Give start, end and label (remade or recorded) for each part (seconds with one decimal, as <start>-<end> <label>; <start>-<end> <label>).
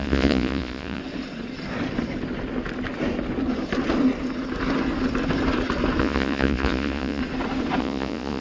0.0-1.0 remade; 1.0-6.0 recorded; 6.0-7.2 remade; 7.2-7.8 recorded; 7.8-8.4 remade